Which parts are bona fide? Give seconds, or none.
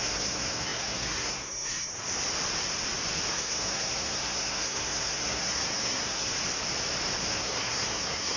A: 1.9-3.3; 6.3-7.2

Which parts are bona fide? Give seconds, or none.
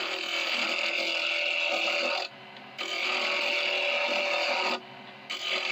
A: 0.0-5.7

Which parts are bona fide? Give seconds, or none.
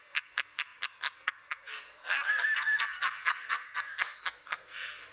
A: none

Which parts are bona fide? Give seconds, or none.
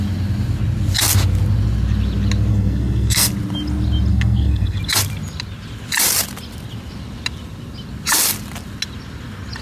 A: 0.0-2.5; 3.3-4.1; 4.8-9.6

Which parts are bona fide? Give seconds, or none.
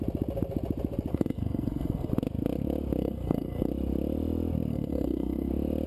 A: 0.0-1.1; 2.1-3.0; 3.7-4.7; 5.5-5.9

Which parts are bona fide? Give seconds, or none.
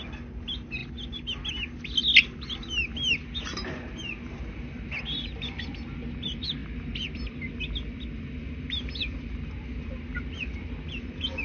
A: 0.0-11.4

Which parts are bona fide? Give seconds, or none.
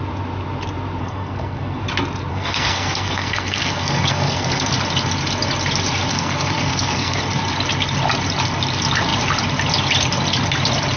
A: 0.0-1.0; 1.8-2.3; 4.7-6.1; 7.2-11.0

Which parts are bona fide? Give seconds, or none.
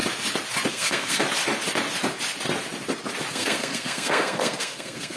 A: 0.0-0.7; 1.2-3.3